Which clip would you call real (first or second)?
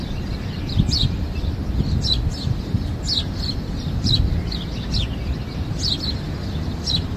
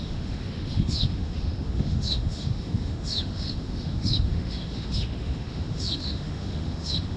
first